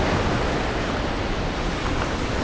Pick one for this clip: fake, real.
fake